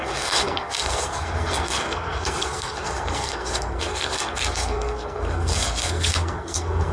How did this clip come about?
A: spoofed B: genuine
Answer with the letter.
A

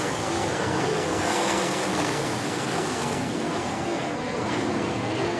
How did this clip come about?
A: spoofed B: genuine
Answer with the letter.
A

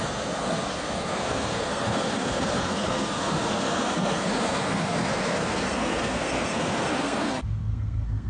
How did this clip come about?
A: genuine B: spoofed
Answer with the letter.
B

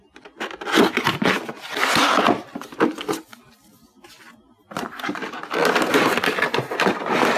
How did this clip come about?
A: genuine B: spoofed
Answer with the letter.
A